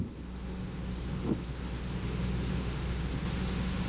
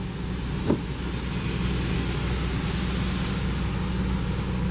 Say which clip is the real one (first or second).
second